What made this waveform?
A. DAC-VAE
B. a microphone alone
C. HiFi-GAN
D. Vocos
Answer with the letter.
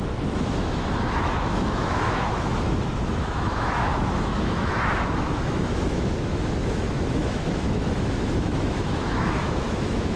A